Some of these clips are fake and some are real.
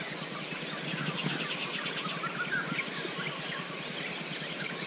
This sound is real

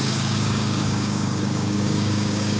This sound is fake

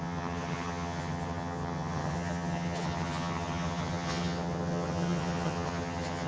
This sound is fake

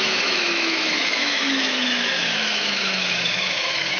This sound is fake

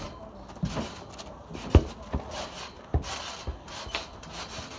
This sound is real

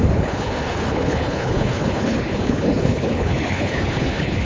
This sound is fake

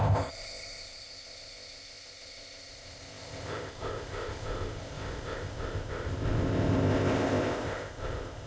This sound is fake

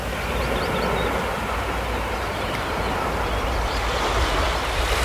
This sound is real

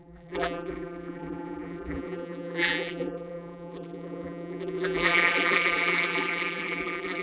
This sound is fake